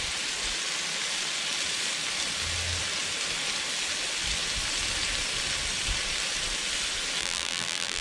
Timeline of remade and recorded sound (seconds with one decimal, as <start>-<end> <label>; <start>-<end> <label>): 0.0-7.2 recorded; 7.2-8.0 remade